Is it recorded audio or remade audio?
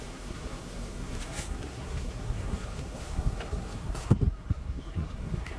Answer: remade